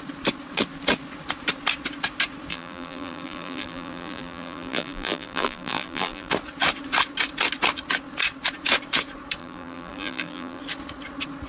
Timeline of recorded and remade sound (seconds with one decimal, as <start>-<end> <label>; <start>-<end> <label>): 0.0-2.5 recorded; 2.5-6.3 remade; 6.3-9.4 recorded; 9.4-10.6 remade; 10.6-11.5 recorded